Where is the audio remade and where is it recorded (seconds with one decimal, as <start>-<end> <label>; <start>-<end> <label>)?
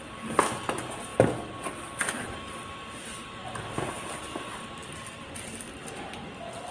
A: 0.0-4.8 recorded; 4.8-6.3 remade; 6.3-6.7 recorded